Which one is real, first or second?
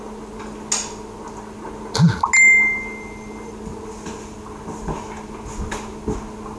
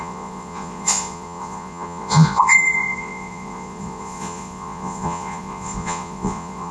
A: first